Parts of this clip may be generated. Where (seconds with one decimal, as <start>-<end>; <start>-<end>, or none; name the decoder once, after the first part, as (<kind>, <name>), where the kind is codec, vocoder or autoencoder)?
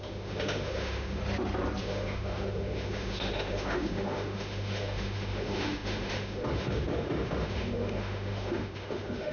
0.0-1.2 (autoencoder, DAC-VAE); 1.8-9.3